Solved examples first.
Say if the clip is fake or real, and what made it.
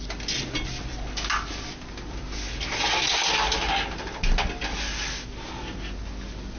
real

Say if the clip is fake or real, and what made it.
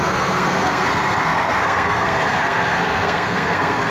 fake, codec, SNAC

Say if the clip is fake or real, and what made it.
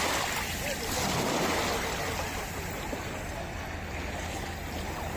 real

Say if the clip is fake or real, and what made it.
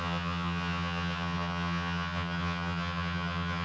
fake, vocoder, HiFi-GAN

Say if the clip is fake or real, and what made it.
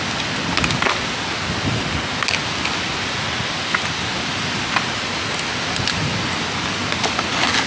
real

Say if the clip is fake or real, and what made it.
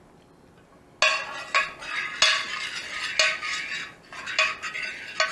real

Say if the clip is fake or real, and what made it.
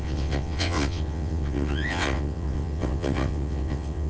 fake, vocoder, WaveNeXt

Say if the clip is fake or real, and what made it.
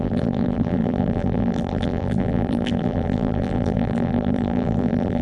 fake, vocoder, BigVGAN v2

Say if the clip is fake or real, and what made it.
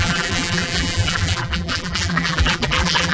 fake, vocoder, BigVGAN v2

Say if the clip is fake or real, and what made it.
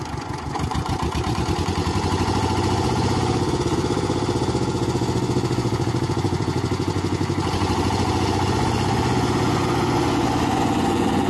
fake, vocoder, Vocos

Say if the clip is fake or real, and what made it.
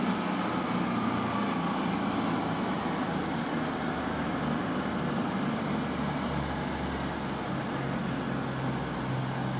real